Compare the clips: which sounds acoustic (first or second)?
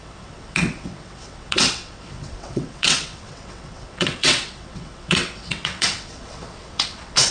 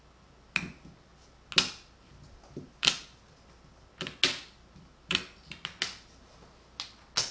second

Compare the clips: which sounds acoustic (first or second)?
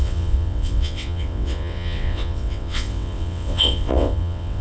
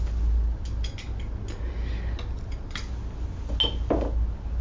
second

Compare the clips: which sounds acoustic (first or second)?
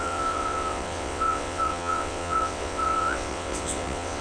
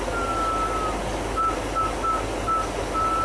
second